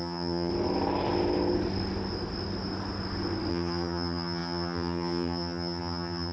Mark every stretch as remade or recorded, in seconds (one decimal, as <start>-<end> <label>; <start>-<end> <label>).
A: 0.0-0.5 remade; 0.5-3.5 recorded; 3.5-6.3 remade